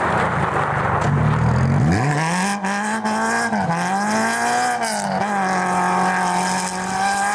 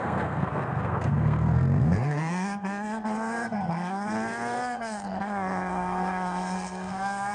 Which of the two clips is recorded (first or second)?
first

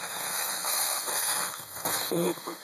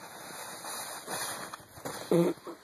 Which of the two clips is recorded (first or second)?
second